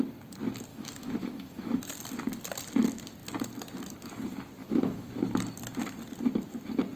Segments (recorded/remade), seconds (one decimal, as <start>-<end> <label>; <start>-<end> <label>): 0.0-0.7 recorded; 0.7-1.8 remade; 1.8-4.6 recorded; 4.6-5.1 remade; 5.1-7.0 recorded

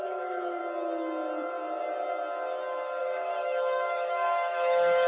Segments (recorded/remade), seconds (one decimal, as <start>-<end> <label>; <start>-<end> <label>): 0.0-0.6 remade; 0.6-3.0 recorded; 3.0-5.1 remade

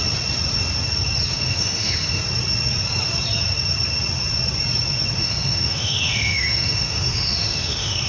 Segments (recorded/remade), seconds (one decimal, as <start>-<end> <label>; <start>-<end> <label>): 0.0-1.3 recorded; 1.3-2.2 remade; 2.2-5.2 recorded; 5.2-8.1 remade